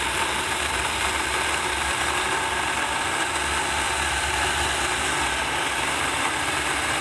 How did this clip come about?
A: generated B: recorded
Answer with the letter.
B